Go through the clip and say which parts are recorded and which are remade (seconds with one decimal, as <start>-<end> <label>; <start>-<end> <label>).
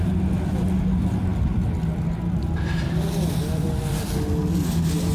0.0-5.1 recorded